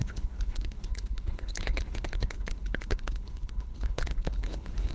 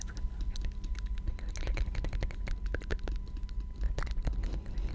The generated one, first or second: first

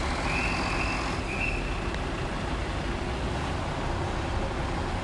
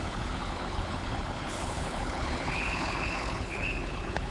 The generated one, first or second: second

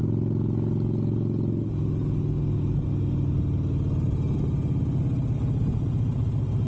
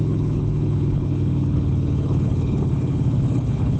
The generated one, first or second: second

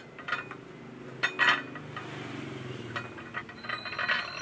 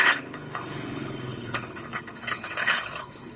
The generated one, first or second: second